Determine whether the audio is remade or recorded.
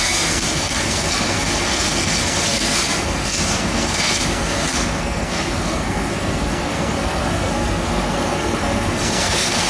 remade